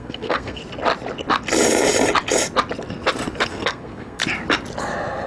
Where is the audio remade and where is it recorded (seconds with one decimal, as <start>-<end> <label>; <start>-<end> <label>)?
0.0-0.6 remade; 0.6-3.5 recorded; 3.5-4.2 remade; 4.2-5.3 recorded